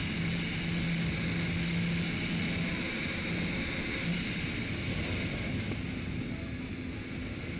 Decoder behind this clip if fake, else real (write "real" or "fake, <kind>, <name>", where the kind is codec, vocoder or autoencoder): real